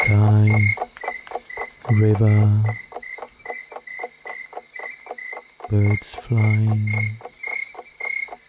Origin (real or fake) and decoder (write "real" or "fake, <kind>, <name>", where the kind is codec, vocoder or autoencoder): real